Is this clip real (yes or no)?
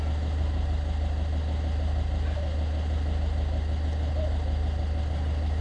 yes